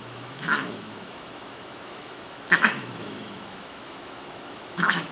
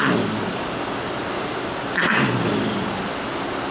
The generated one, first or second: first